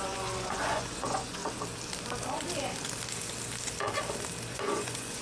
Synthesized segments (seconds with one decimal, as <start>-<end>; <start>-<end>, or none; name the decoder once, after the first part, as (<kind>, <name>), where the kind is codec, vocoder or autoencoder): 0.0-1.4 (vocoder, Vocos); 4.5-5.2